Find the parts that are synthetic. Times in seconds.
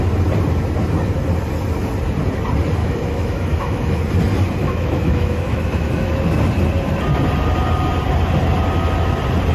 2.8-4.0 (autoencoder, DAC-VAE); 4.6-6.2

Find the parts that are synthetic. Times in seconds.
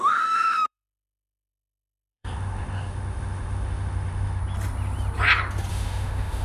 0.0-4.4 (autoencoder, DAC-VAE); 5.7-6.4